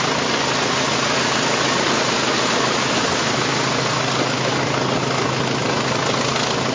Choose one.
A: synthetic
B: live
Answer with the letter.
B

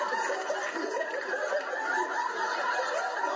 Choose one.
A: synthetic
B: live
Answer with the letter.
B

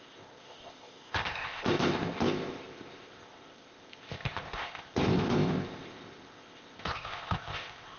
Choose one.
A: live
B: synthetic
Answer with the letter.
B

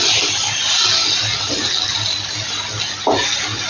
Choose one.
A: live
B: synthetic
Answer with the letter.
A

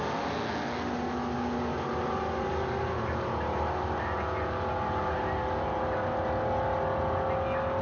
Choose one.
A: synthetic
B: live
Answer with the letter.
B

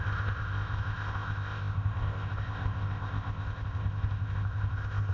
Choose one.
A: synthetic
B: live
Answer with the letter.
A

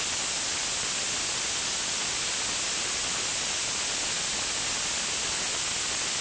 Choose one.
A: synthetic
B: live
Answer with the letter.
B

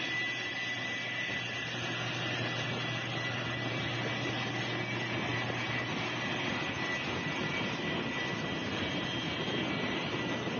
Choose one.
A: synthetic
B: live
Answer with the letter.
B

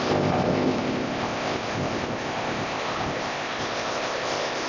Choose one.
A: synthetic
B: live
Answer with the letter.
A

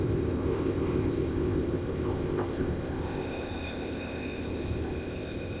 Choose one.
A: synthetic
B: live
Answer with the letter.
A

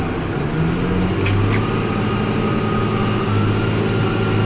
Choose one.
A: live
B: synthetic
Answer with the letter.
A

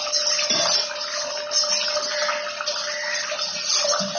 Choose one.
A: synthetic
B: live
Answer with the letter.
B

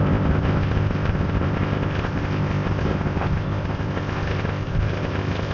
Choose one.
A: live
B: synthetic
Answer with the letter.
B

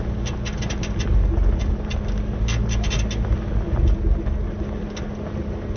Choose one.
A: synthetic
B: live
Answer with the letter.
B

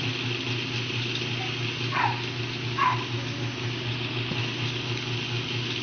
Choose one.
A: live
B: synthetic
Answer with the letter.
A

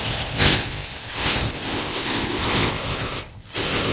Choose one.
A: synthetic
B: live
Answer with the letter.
A